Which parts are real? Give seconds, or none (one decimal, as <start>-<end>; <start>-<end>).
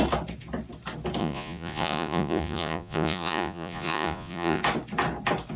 0.0-1.2; 4.6-5.6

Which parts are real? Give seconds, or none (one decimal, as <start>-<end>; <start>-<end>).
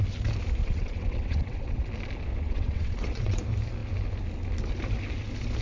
0.0-0.6; 1.8-2.3; 3.4-5.6